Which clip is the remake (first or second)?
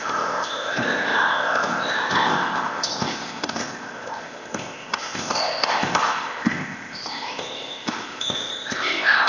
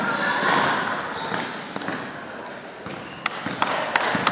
first